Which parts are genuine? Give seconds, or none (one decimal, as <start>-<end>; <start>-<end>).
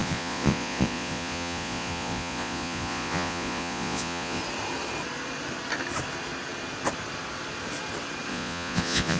4.4-8.3